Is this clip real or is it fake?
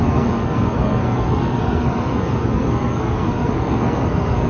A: fake